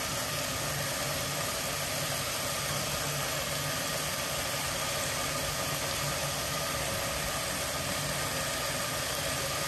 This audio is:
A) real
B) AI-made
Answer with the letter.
A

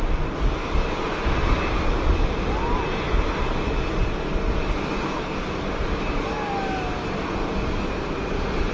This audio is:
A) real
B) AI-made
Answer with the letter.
A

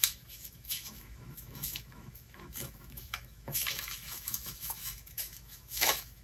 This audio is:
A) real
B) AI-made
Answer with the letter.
B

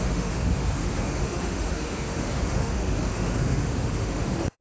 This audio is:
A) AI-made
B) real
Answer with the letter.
A